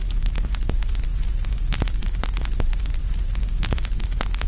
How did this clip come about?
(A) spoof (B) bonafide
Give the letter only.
A